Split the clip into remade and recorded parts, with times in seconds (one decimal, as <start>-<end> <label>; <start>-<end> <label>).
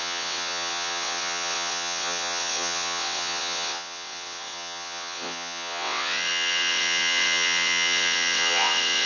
0.0-9.1 remade